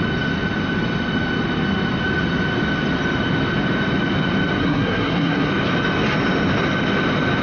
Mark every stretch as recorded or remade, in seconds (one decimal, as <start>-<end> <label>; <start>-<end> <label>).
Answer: 0.0-4.6 recorded; 4.6-5.5 remade; 5.5-7.4 recorded